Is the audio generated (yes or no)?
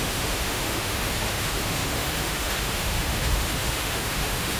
yes